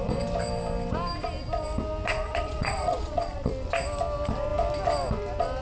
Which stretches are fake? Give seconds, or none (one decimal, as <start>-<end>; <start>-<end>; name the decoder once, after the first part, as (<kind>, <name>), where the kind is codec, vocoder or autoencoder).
2.1-3.5 (vocoder, Vocos)